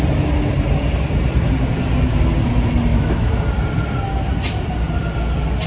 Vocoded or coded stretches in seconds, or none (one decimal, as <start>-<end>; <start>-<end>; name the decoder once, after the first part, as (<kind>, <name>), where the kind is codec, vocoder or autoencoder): 2.9-3.4 (autoencoder, DAC-VAE)